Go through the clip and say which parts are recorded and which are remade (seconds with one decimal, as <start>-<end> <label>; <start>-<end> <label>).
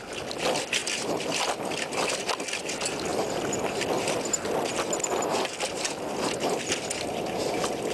0.0-7.9 recorded